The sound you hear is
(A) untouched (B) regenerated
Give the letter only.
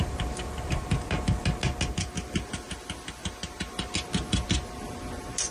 A